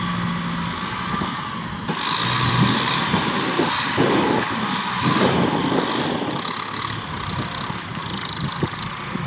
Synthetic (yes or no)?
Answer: no